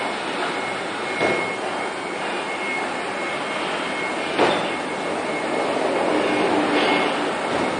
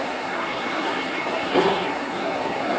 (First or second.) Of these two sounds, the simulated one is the second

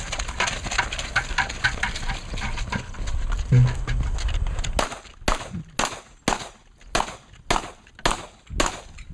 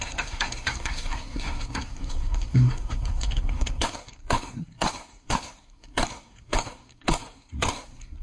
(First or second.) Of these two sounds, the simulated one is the second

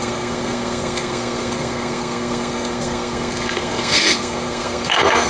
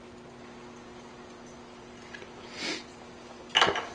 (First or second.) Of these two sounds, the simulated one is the first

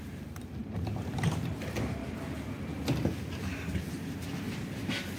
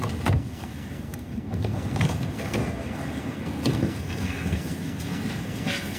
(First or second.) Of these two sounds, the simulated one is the second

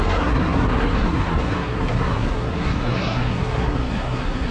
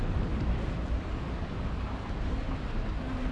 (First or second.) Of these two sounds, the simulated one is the first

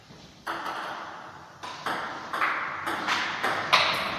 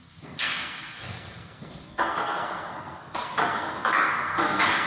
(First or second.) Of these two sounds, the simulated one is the second